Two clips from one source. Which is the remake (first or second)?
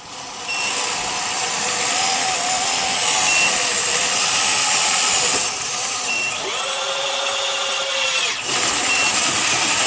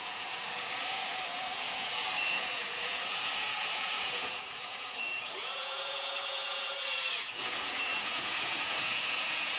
second